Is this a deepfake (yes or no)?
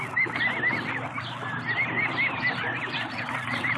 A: no